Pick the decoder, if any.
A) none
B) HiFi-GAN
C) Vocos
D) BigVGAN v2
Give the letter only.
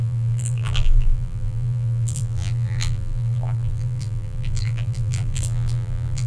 D